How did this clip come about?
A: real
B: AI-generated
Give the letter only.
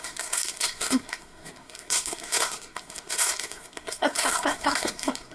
B